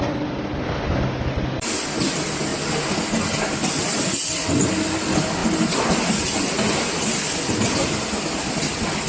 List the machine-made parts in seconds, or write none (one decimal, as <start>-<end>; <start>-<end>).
none